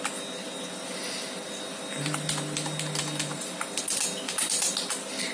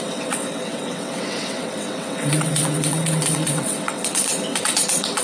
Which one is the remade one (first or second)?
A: second